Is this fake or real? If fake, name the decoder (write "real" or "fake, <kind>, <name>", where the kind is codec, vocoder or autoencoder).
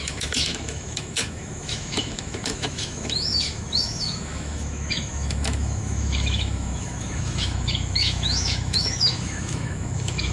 fake, autoencoder, DAC-VAE